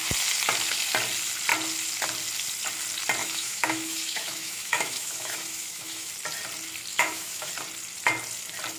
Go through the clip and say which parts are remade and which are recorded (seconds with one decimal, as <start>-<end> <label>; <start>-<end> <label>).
0.0-3.2 recorded; 3.2-6.1 remade; 6.1-6.9 recorded; 6.9-7.5 remade; 7.5-8.8 recorded